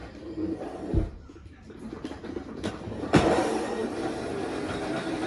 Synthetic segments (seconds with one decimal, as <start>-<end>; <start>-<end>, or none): 0.0-5.3